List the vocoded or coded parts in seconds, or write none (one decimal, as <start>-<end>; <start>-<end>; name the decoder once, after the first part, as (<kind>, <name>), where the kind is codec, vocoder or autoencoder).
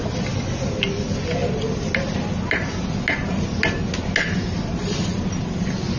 none